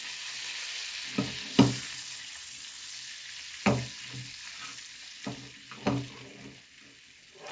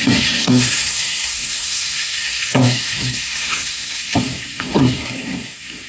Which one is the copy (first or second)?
second